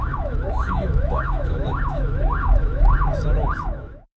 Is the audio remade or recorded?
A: remade